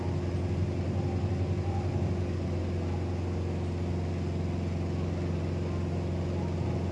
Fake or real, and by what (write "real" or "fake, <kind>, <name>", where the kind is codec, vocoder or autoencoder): real